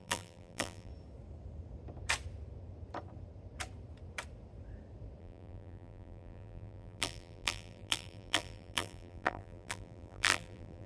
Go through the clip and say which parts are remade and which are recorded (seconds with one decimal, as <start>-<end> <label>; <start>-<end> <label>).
0.0-0.9 remade; 0.9-5.2 recorded; 5.2-10.9 remade